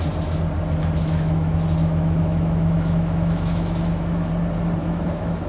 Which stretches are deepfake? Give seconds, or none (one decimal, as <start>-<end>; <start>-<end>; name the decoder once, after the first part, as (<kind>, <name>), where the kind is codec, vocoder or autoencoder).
1.0-4.3 (autoencoder, DAC-VAE); 4.8-5.5